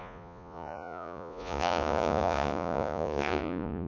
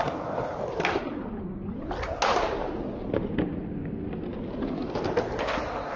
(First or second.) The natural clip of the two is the second